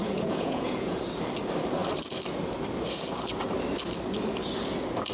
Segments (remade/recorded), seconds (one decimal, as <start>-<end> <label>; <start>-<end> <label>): 0.0-1.0 remade; 1.0-5.1 recorded